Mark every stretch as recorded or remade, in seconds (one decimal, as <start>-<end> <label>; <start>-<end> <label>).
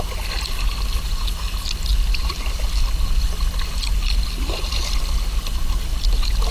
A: 0.0-1.9 recorded; 1.9-2.6 remade; 2.6-6.5 recorded